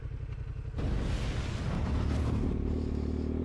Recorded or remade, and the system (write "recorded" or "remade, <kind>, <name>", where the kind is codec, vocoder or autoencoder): recorded